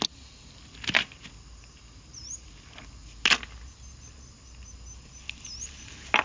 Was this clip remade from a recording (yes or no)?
no